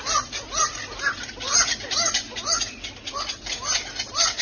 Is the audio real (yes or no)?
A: yes